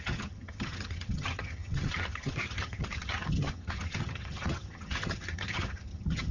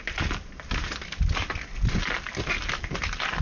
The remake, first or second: first